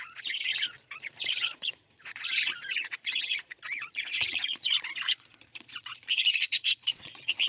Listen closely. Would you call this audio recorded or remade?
remade